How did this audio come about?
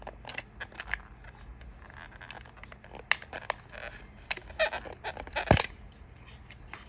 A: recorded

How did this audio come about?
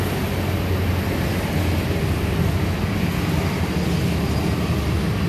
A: recorded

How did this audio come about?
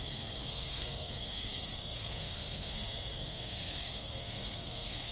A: remade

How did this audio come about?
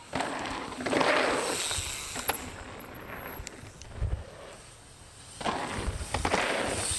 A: recorded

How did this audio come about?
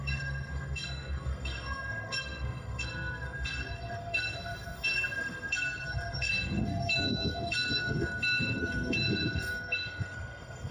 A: remade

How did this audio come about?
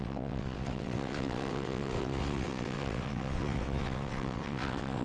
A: remade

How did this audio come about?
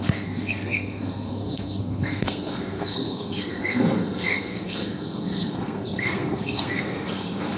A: remade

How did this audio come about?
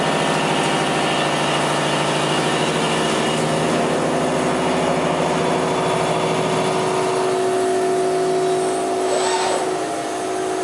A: recorded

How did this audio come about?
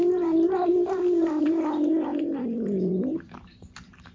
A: remade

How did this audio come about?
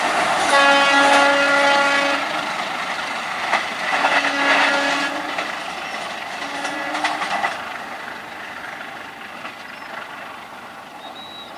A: recorded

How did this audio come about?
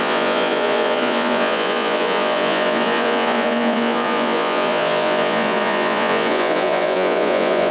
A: remade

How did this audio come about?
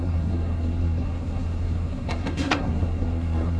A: remade